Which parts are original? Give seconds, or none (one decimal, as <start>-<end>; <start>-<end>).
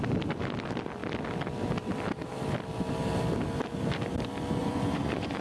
0.0-4.6